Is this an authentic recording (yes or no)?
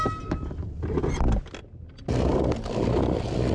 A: yes